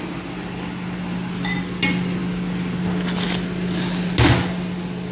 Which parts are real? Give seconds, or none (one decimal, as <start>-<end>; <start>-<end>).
0.0-5.1